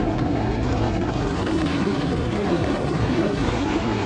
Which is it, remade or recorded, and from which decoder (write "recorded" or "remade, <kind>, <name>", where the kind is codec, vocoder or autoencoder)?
remade, codec, SNAC